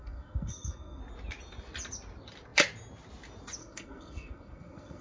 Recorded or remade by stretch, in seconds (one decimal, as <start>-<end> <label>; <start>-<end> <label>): 0.0-1.0 remade; 1.0-3.6 recorded; 3.6-5.0 remade